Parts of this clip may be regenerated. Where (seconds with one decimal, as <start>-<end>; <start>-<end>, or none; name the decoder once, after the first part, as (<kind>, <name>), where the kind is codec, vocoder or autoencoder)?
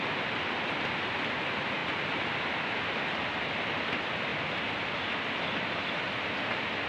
none